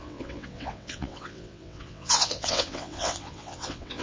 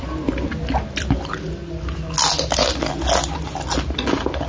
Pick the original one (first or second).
second